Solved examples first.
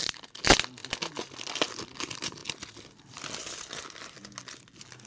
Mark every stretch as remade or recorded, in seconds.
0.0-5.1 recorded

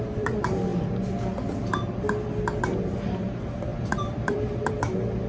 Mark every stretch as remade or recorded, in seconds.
0.0-0.7 remade; 0.7-2.6 recorded; 2.6-5.3 remade

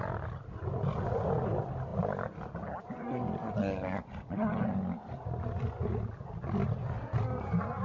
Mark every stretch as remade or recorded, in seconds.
0.0-7.8 recorded